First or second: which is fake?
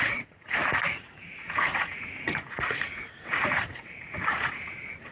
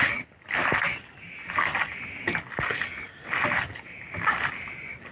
first